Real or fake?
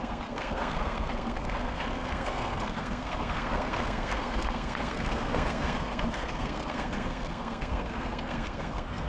fake